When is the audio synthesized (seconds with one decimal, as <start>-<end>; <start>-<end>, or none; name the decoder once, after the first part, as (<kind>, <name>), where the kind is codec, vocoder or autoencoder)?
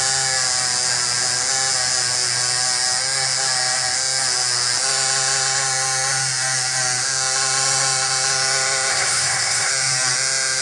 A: 8.9-9.7 (codec, SNAC)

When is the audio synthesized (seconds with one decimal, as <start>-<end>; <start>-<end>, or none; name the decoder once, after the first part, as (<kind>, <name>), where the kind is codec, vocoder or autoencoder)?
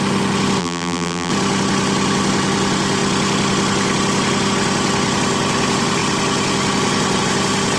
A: 0.6-1.3 (vocoder, BigVGAN v2)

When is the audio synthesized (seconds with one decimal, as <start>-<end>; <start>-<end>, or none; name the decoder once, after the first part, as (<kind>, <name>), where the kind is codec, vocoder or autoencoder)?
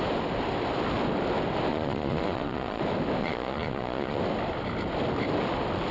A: 1.7-2.8 (vocoder, Vocos); 3.2-4.2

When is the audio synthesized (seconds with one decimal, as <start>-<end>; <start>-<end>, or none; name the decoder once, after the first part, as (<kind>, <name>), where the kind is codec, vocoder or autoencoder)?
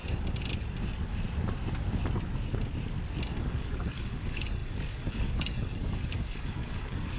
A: 3.4-7.2 (codec, DAC)